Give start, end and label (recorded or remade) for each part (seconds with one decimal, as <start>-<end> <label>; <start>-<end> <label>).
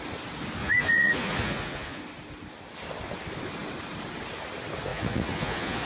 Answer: 0.0-0.6 recorded; 0.6-2.0 remade; 2.0-4.9 recorded; 4.9-5.9 remade